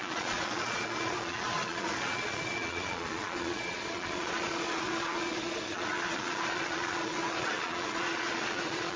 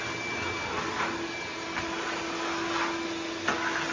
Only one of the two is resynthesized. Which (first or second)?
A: first